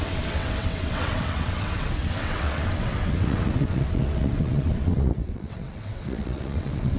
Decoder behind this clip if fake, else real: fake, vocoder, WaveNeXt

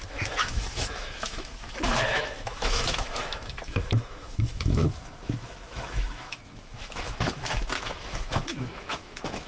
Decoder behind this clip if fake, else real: fake, autoencoder, DAC-VAE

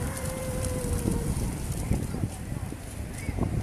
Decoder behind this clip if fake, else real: fake, vocoder, BigVGAN v2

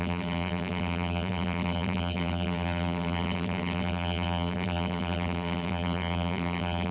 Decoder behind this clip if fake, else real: fake, vocoder, BigVGAN v2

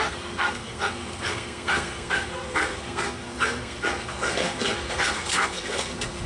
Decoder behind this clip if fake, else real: fake, codec, SNAC